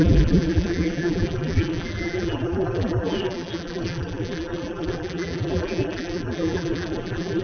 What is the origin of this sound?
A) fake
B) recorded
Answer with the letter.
A